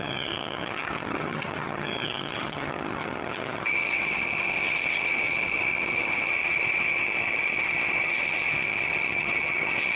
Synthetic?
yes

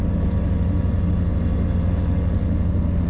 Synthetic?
no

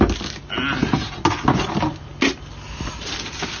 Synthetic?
no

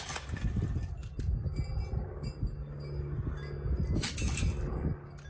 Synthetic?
no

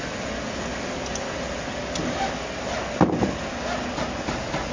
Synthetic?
no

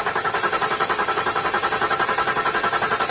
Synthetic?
no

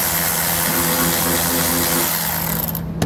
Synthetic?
no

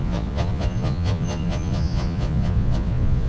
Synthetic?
yes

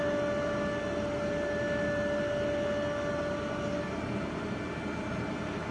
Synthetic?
no